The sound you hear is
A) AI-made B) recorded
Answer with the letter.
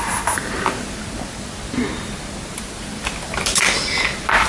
B